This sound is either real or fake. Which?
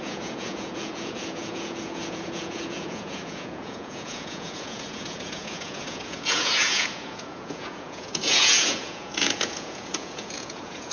fake